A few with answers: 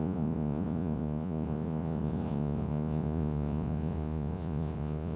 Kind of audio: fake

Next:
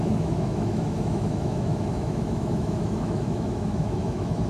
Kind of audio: fake